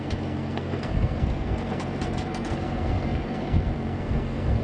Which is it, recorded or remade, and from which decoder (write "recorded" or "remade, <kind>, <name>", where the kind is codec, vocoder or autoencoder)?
remade, codec, SNAC